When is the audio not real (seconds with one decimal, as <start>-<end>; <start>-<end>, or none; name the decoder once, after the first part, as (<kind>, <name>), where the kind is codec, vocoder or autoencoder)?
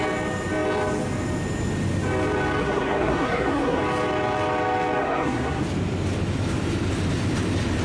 2.6-3.8 (codec, SNAC); 5.0-5.6